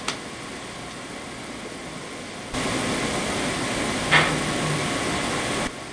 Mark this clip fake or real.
real